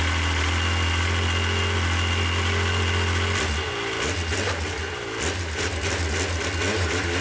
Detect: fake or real real